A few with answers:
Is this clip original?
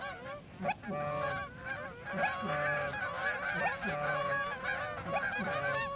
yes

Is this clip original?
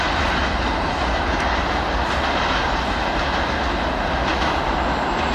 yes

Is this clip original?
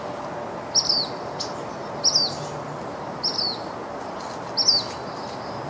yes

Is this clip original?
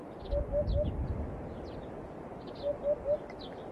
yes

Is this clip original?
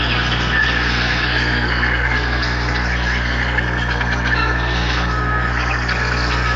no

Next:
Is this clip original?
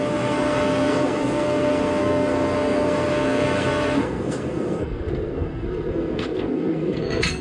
no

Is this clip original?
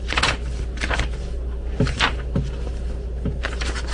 yes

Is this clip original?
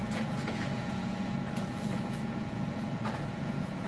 no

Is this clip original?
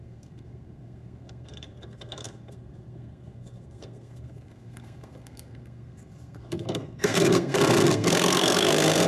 no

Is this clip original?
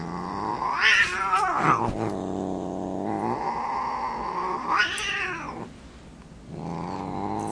yes